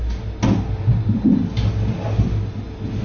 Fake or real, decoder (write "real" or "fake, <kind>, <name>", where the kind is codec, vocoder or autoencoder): real